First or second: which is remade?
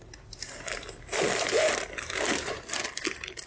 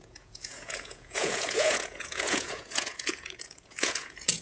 second